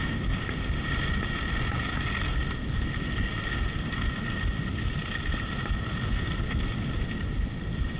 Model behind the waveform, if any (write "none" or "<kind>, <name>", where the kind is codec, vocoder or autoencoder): none